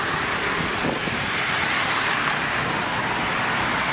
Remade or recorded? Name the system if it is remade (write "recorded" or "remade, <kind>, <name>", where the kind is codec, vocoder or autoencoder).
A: recorded